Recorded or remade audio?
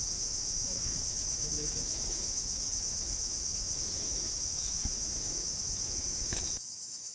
remade